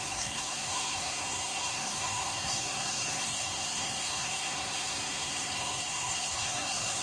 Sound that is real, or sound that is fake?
fake